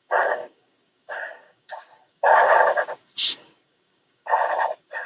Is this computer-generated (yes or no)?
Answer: yes